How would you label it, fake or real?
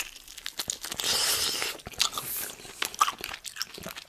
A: real